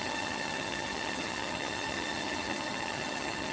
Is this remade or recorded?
remade